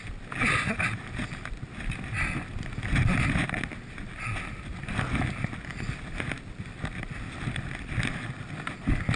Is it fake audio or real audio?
real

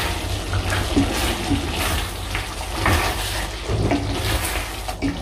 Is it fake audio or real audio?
real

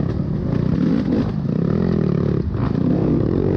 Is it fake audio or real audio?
real